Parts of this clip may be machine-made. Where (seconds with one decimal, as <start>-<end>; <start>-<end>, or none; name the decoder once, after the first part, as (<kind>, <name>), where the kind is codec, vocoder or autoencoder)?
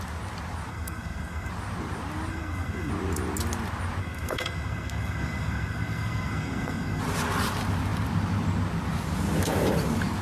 0.7-1.5 (codec, SNAC); 2.3-2.9; 4.0-7.0